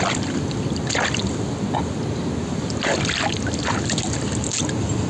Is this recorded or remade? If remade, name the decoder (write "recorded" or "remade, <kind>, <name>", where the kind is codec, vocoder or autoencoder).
recorded